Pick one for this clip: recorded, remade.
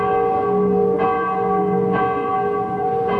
recorded